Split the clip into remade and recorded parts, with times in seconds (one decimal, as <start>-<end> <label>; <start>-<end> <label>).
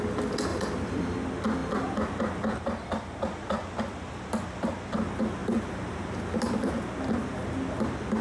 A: 0.0-0.5 recorded; 0.5-1.0 remade; 1.0-5.4 recorded; 5.4-6.2 remade; 6.2-8.2 recorded